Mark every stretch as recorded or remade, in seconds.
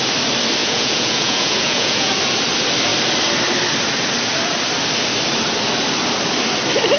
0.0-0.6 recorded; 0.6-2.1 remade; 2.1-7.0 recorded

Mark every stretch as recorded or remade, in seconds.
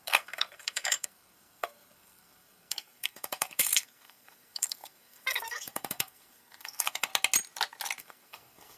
0.0-7.1 remade; 7.1-8.0 recorded; 8.0-8.8 remade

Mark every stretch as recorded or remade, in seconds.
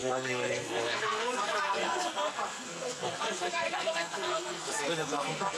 0.0-5.6 remade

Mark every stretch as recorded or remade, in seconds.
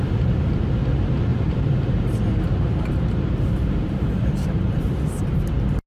0.0-1.3 recorded; 1.3-4.8 remade; 4.8-5.9 recorded